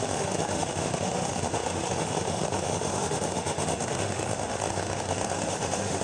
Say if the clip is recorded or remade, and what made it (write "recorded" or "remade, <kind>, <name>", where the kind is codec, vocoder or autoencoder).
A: remade, autoencoder, DAC-VAE